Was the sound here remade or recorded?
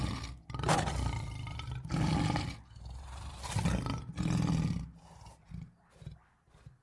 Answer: recorded